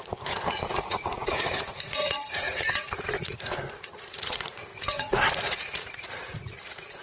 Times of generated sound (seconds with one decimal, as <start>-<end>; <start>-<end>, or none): 0.0-7.0